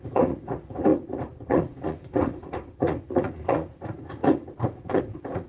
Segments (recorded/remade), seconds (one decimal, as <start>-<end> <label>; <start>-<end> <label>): 0.0-5.5 remade